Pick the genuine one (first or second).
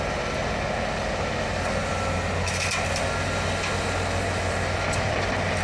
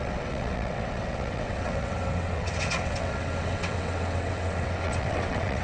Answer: first